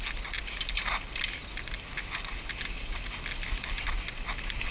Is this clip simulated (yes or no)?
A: no